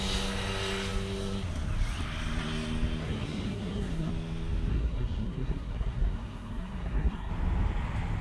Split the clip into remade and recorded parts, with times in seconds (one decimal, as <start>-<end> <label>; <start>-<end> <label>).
0.0-3.0 recorded; 3.0-4.1 remade; 4.1-4.7 recorded; 4.7-7.3 remade; 7.3-8.2 recorded